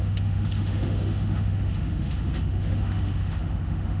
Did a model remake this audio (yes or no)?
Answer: yes